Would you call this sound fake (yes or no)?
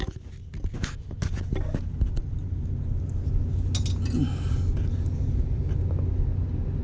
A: no